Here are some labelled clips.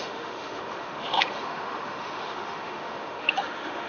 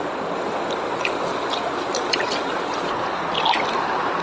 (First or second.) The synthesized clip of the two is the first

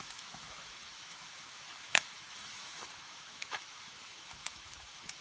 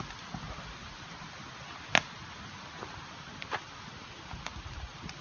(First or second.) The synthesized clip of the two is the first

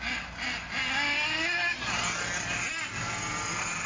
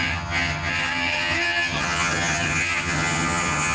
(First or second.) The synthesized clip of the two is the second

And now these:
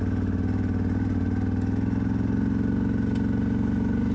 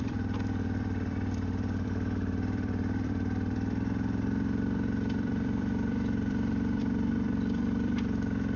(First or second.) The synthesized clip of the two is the second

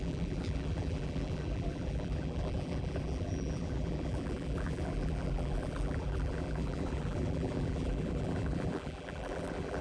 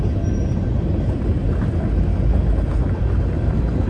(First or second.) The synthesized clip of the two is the first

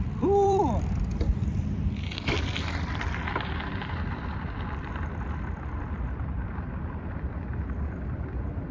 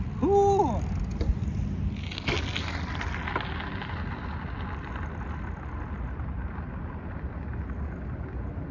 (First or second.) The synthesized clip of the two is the first